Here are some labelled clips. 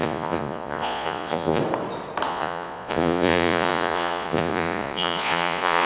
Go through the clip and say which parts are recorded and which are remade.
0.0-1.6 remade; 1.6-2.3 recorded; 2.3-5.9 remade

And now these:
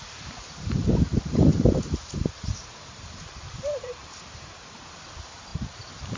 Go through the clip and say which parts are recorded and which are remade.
0.0-1.1 recorded; 1.1-4.8 remade; 4.8-5.5 recorded; 5.5-6.2 remade

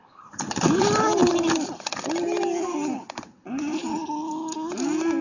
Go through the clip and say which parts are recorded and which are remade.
0.0-5.2 recorded

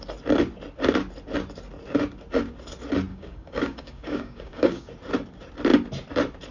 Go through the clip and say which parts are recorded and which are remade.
0.0-3.1 recorded; 3.1-4.9 remade; 4.9-6.5 recorded